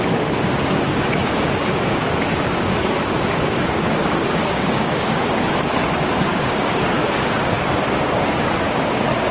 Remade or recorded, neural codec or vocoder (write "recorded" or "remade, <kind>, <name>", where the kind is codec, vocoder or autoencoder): remade, codec, DAC